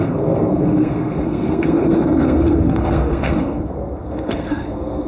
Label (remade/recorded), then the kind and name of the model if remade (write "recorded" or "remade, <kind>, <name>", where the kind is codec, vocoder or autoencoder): remade, codec, SNAC